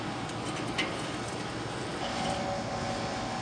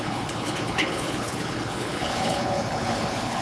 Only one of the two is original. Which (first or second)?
first